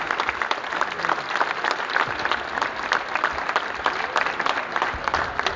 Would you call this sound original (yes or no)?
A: yes